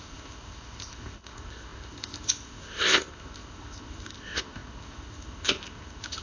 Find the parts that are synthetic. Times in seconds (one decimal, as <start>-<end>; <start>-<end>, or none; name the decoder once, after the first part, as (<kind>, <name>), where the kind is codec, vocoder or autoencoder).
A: 0.0-6.2 (codec, ZipCodec)